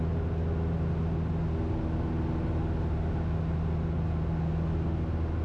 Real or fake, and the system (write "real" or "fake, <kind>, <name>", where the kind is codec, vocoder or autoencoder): real